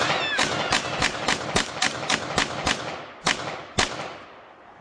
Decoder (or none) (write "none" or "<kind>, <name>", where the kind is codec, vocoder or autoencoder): none